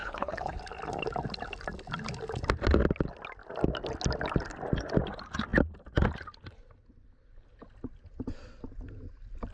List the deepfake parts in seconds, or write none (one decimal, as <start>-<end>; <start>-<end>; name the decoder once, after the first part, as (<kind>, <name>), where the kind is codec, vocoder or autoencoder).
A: 0.0-0.6 (codec, HILCodec)